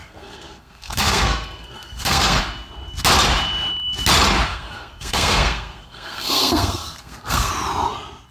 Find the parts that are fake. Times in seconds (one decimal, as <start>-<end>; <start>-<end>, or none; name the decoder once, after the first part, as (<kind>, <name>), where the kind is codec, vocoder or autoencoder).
0.0-2.4 (codec, SNAC); 4.5-7.5